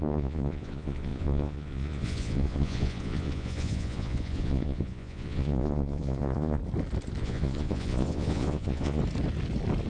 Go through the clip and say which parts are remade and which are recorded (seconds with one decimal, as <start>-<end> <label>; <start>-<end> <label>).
0.0-6.6 remade; 6.6-7.2 recorded; 7.2-9.0 remade; 9.0-9.9 recorded